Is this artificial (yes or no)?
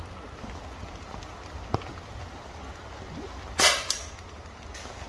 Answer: no